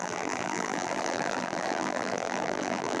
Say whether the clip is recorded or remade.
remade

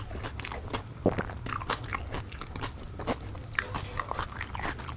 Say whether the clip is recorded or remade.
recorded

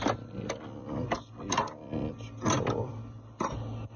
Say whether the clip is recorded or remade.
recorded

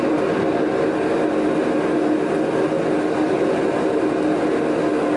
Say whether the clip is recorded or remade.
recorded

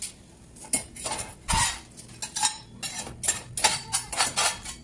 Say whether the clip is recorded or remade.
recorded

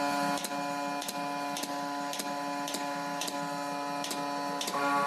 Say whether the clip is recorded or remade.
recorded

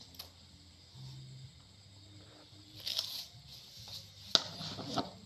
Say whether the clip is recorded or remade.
recorded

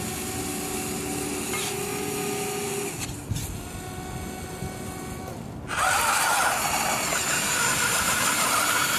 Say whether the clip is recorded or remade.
recorded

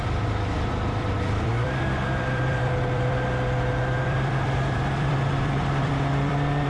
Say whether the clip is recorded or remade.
remade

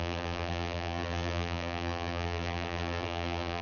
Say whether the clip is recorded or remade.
remade